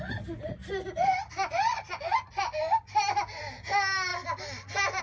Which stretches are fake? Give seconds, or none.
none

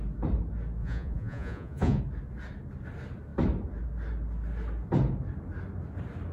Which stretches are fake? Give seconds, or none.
0.8-2.0 (vocoder, Vocos)

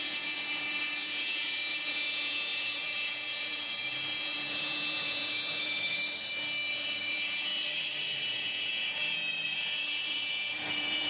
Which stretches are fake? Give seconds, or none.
0.0-6.0 (vocoder, Vocos); 6.7-7.5; 8.3-11.1

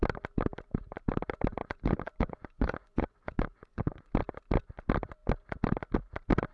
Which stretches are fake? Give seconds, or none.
1.6-4.1 (vocoder, Vocos)

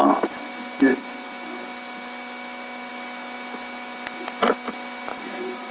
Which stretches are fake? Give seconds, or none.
5.1-5.7 (vocoder, Vocos)

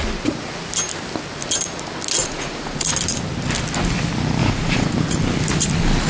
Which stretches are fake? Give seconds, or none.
2.2-2.9 (vocoder, Vocos); 4.4-4.9

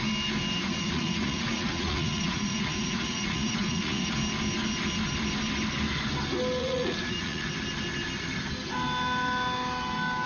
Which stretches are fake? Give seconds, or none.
0.6-4.1 (vocoder, Vocos); 6.6-7.5

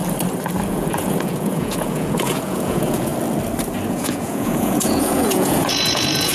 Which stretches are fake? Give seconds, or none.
0.7-3.1 (vocoder, Vocos); 3.9-6.3